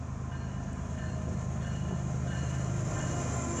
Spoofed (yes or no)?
no